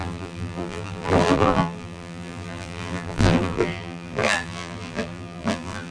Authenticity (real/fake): fake